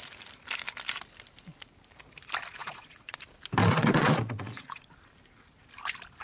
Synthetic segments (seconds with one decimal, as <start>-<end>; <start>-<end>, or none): 2.6-3.2; 3.6-4.9